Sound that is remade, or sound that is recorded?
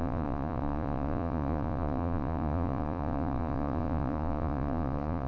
remade